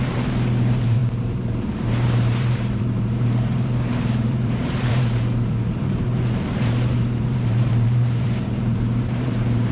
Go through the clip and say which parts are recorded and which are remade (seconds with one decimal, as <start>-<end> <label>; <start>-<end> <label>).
0.0-9.7 remade